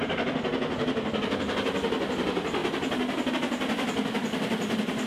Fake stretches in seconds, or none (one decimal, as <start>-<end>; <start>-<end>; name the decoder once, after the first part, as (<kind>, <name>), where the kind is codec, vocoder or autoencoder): none